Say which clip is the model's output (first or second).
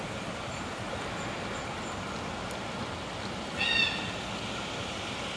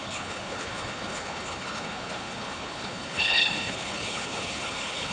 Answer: second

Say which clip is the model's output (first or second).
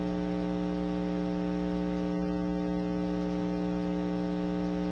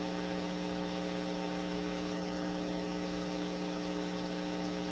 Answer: second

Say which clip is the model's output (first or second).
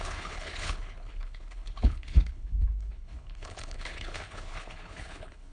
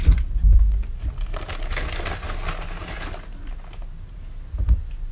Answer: first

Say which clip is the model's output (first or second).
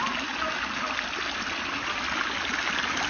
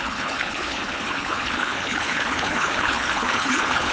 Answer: second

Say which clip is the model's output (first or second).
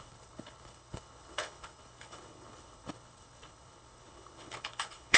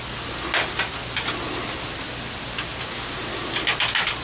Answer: first